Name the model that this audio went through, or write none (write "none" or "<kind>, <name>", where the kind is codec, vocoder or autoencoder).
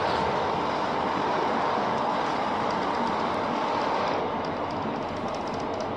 none